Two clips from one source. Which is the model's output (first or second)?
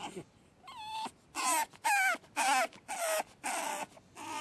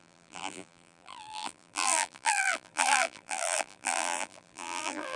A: second